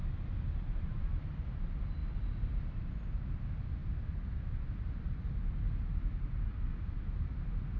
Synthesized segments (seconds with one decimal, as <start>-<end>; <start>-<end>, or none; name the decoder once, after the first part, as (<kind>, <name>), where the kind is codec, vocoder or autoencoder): none

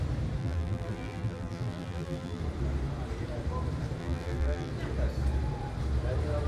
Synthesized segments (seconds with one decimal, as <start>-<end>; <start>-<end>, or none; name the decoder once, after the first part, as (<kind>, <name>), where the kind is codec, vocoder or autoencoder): 0.4-2.4 (vocoder, BigVGAN v2); 4.0-4.7

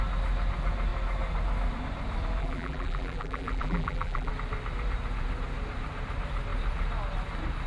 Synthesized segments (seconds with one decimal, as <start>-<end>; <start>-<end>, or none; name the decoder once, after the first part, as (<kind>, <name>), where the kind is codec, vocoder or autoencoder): 2.4-4.3 (vocoder, BigVGAN v2)

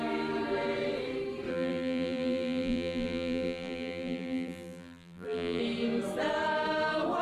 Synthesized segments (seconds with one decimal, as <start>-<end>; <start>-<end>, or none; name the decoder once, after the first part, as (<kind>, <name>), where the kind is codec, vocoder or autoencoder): 1.5-5.6 (vocoder, BigVGAN v2)